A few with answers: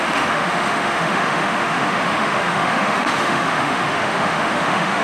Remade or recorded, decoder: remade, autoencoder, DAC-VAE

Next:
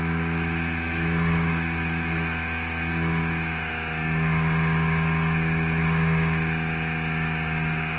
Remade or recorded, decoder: remade, autoencoder, DAC-VAE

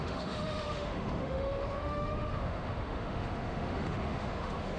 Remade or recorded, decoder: remade, autoencoder, DAC-VAE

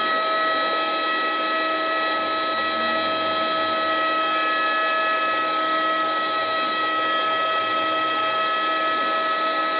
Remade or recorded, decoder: recorded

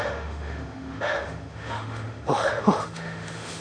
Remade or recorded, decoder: remade, autoencoder, DAC-VAE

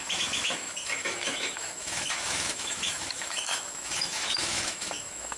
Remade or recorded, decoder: remade, autoencoder, DAC-VAE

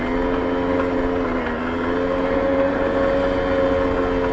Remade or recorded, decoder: recorded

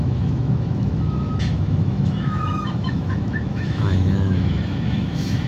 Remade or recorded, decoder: remade, autoencoder, DAC-VAE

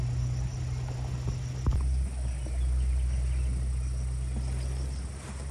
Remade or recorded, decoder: recorded